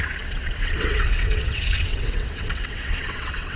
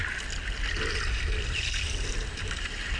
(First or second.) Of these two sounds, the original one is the second